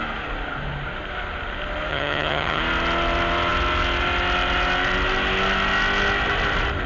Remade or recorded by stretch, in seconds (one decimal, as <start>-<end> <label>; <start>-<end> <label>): 0.0-1.9 recorded; 1.9-2.6 remade; 2.6-6.9 recorded